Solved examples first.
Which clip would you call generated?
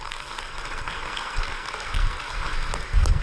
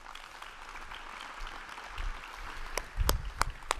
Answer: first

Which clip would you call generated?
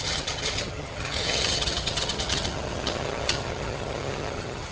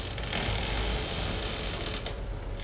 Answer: first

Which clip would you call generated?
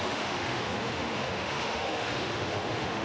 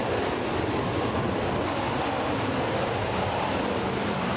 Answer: first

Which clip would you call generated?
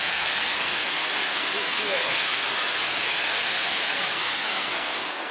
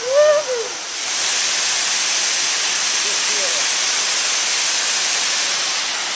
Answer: first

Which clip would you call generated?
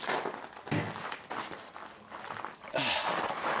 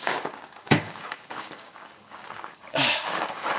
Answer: second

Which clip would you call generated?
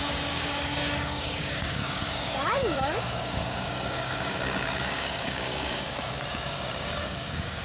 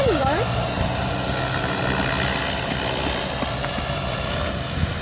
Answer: first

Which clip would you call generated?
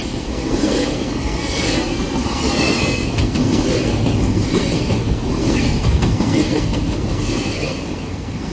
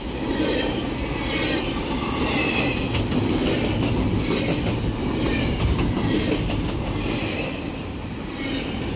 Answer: first